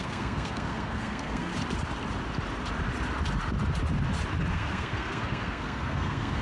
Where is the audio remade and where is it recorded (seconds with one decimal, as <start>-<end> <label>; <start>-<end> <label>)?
0.0-1.5 remade; 1.5-4.5 recorded; 4.5-6.4 remade